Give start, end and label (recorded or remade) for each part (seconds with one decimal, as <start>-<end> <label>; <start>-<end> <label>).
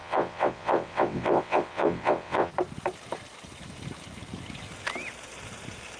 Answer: 0.0-2.5 remade; 2.5-6.0 recorded